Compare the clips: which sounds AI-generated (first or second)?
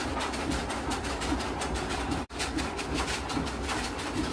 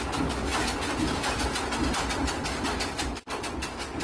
first